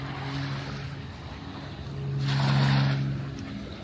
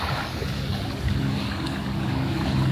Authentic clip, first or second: first